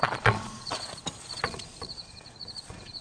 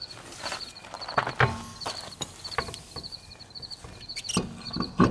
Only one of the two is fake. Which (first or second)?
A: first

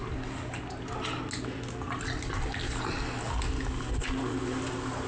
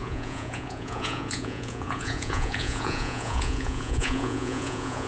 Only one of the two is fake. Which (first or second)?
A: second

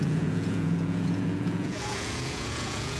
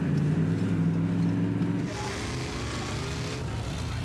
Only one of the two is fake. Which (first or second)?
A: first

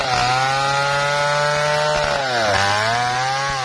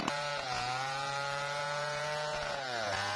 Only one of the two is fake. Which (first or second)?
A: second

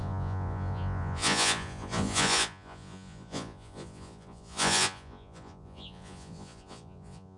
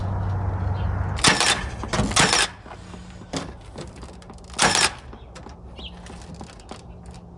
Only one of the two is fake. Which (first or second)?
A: first